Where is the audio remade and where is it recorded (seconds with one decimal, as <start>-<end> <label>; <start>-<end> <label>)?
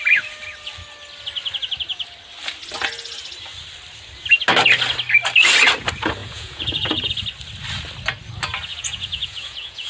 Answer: 0.0-6.2 recorded; 6.2-7.1 remade; 7.1-8.7 recorded; 8.7-9.9 remade